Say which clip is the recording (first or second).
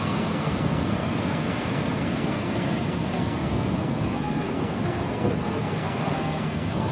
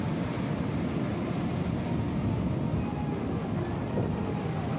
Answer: second